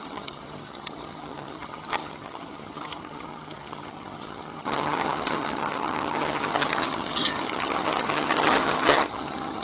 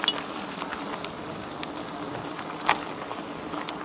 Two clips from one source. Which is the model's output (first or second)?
first